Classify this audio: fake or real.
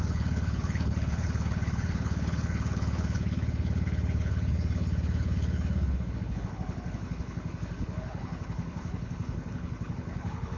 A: fake